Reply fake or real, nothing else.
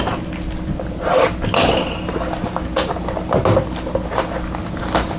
real